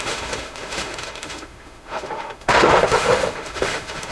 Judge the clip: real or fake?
fake